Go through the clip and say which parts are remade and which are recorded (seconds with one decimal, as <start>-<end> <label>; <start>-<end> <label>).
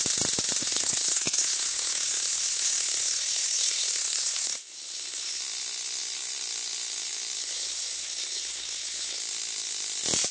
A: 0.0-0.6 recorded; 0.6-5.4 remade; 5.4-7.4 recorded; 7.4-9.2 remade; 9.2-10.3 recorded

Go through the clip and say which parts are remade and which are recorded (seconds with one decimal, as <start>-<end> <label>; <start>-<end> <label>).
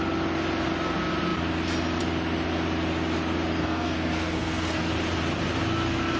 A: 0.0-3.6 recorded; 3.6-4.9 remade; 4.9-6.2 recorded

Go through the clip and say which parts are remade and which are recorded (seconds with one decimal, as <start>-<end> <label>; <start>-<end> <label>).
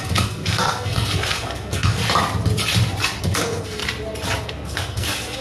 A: 0.0-2.0 remade; 2.0-3.2 recorded; 3.2-3.8 remade; 3.8-4.4 recorded; 4.4-5.4 remade